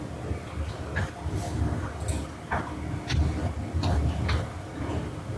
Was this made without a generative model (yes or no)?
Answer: yes